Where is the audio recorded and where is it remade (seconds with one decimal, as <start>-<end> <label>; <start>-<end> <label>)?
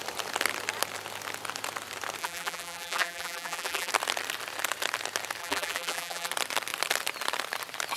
0.0-2.2 recorded; 2.2-3.9 remade; 3.9-5.4 recorded; 5.4-6.3 remade; 6.3-8.0 recorded